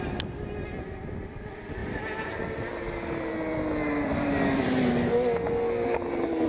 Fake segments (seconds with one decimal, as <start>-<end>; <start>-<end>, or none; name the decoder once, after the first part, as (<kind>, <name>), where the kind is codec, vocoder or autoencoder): 1.8-2.4 (vocoder, BigVGAN v2); 3.8-4.9